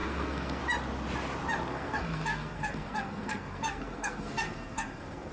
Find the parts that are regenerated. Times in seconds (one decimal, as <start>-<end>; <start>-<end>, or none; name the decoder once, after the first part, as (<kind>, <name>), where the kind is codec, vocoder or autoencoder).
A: 0.0-0.6 (codec, SNAC); 1.7-5.3